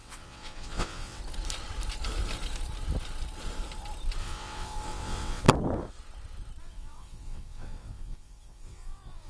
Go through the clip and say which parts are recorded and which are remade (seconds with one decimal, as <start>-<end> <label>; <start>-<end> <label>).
0.0-1.2 remade; 1.2-4.2 recorded; 4.2-5.4 remade; 5.4-6.6 recorded; 6.6-9.3 remade